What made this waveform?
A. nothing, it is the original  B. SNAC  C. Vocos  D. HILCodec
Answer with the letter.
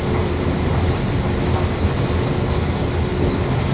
A